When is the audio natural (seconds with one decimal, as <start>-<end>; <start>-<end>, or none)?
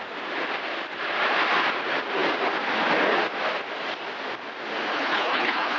0.0-4.9